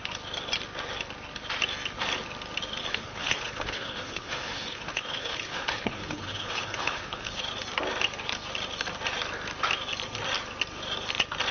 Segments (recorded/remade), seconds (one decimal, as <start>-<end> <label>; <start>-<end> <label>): 0.0-2.9 recorded; 2.9-7.4 remade; 7.4-11.5 recorded